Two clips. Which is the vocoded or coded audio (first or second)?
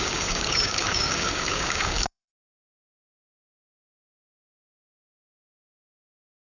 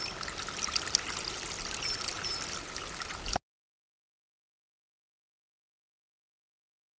first